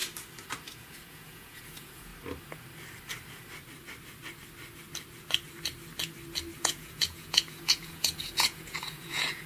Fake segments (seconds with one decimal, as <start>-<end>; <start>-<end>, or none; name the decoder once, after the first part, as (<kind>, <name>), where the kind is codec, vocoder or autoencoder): 0.8-2.1 (vocoder, Vocos); 6.6-9.5